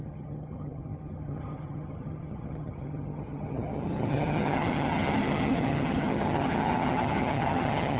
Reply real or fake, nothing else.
fake